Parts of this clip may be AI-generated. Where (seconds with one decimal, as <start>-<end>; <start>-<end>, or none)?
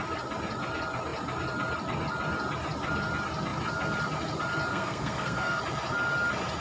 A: 4.7-5.6